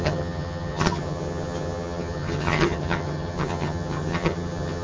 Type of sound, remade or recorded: remade